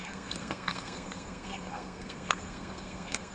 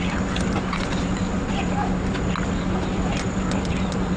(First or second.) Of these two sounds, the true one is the second